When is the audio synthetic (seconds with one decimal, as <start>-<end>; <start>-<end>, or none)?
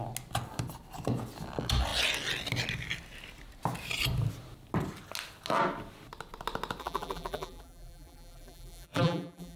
6.8-9.6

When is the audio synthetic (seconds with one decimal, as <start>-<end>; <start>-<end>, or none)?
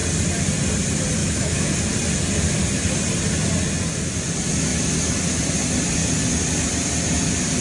1.2-1.7